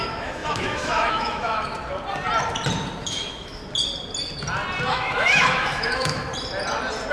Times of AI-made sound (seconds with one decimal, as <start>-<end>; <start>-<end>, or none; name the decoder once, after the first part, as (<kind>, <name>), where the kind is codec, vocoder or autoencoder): 0.0-1.7 (autoencoder, DAC-VAE); 3.0-3.6; 4.9-6.3